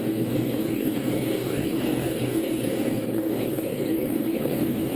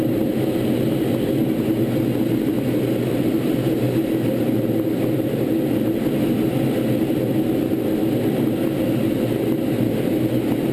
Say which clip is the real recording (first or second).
second